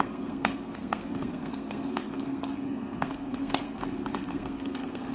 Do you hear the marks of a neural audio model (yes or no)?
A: yes